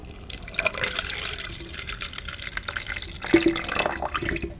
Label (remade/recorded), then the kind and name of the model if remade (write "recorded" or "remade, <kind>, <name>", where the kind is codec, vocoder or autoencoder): recorded